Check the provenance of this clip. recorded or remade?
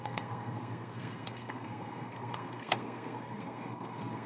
remade